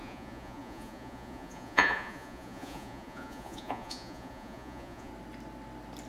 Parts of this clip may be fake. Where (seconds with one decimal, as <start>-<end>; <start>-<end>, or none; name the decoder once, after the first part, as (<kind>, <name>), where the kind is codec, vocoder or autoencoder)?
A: 0.0-5.1 (vocoder, Vocos)